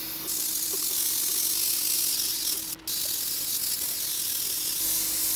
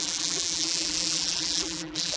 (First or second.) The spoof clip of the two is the second